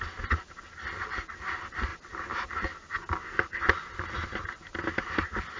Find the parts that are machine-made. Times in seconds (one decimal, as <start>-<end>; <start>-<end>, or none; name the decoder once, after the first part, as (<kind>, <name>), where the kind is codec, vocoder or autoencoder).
none